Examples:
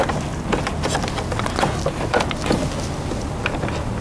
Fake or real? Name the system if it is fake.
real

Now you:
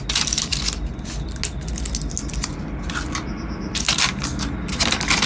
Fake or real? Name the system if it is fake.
real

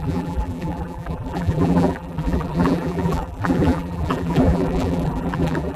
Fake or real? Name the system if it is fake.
fake, vocoder, BigVGAN v2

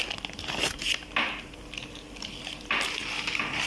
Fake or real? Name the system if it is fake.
real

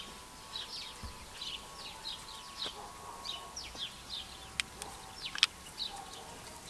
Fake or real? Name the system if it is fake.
real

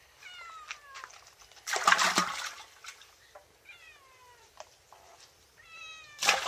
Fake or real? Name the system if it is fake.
real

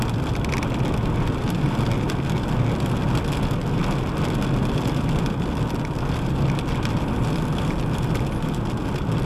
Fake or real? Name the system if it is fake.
real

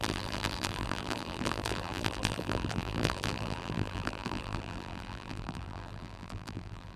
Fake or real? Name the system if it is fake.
fake, vocoder, BigVGAN v2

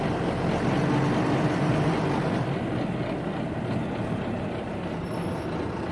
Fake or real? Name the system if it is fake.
fake, vocoder, BigVGAN v2